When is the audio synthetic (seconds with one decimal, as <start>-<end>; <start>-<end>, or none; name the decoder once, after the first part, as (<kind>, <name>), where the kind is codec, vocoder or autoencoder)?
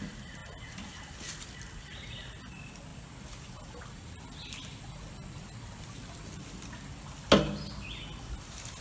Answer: none